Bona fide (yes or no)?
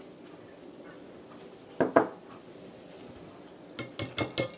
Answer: yes